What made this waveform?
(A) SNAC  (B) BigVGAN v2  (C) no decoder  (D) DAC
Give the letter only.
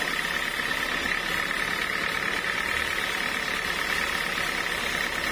C